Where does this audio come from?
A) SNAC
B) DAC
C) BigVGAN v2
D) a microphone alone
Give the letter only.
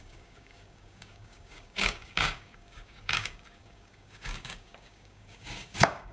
B